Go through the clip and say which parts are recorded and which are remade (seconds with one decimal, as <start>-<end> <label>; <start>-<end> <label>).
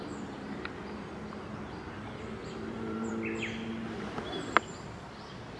0.0-2.4 recorded; 2.4-3.1 remade; 3.1-5.6 recorded